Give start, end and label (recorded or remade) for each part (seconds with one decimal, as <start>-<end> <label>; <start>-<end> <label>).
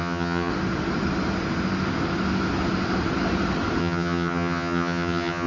0.0-0.5 remade; 0.5-3.8 recorded; 3.8-5.5 remade